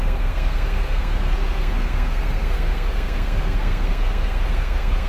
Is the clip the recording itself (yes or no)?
no